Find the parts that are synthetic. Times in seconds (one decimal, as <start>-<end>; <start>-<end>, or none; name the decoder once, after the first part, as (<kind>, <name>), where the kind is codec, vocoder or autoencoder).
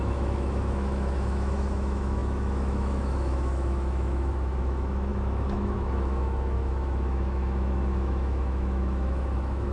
0.0-9.7 (autoencoder, DAC-VAE)